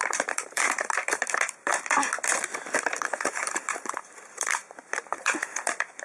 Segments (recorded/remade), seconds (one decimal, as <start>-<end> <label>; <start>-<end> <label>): 0.0-1.7 remade; 1.7-2.9 recorded; 2.9-6.0 remade